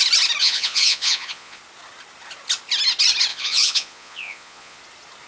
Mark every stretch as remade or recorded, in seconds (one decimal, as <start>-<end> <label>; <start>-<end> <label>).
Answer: 0.0-0.4 recorded; 0.4-1.6 remade; 1.6-3.3 recorded; 3.3-4.8 remade; 4.8-5.3 recorded